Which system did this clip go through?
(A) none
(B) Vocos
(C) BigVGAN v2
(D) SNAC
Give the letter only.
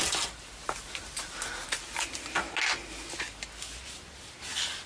A